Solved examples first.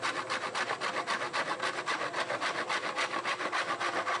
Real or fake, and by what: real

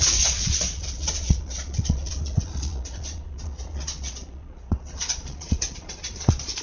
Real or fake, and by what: fake, vocoder, Vocos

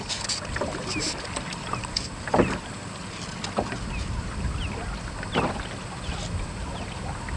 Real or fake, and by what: real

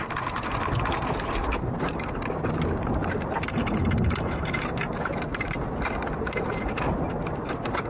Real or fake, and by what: real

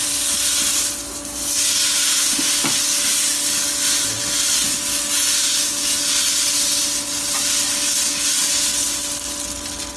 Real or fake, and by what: real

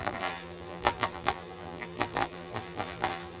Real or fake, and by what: fake, vocoder, BigVGAN v2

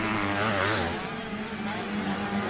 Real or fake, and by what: real